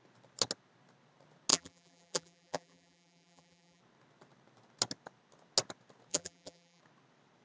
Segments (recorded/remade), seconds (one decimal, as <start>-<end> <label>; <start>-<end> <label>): 0.0-1.5 recorded; 1.5-3.8 remade; 3.8-6.1 recorded; 6.1-6.8 remade; 6.8-7.4 recorded